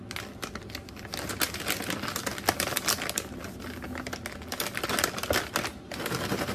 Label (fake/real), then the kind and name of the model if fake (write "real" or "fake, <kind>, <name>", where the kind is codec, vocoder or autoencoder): real